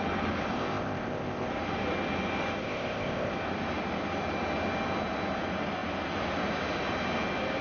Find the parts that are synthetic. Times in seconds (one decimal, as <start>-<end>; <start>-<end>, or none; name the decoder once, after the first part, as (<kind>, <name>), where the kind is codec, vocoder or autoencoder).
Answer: 0.5-1.5 (codec, ZipCodec); 2.6-3.3